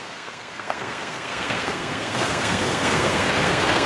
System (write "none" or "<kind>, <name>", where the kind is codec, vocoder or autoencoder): codec, SNAC